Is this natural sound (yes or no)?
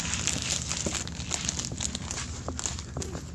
yes